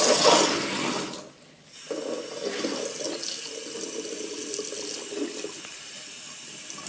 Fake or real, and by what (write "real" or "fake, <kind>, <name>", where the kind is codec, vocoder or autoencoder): real